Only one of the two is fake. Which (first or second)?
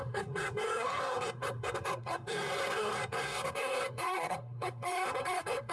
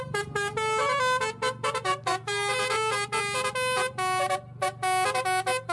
first